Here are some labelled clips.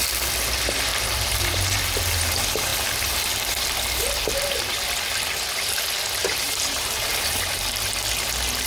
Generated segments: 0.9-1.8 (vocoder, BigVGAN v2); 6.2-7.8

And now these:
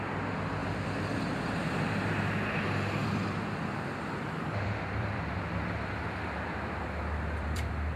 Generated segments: 0.6-1.8 (vocoder, BigVGAN v2); 3.0-8.0

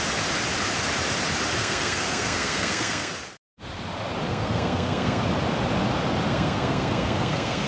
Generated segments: 1.6-3.1 (codec, SNAC); 4.3-5.2; 6.3-7.7

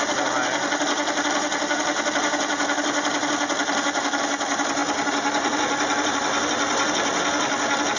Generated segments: none

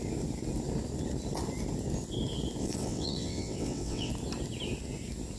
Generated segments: 2.6-4.1 (vocoder, WaveNeXt)

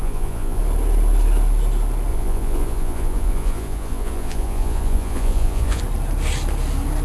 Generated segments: 0.0-0.6 (vocoder, Vocos); 2.1-5.8

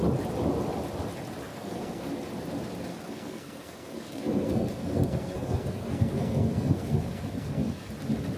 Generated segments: 1.5-2.1 (codec, SNAC); 2.9-7.9